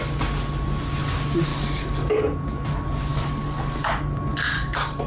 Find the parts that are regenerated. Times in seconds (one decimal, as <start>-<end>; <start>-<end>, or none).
1.5-2.2; 3.1-3.9; 4.5-5.1